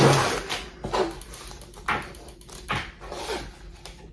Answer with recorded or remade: recorded